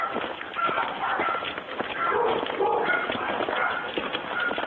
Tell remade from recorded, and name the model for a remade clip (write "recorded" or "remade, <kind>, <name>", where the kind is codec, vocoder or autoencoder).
recorded